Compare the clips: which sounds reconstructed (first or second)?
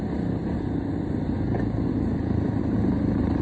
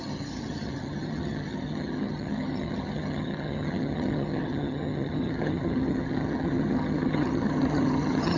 second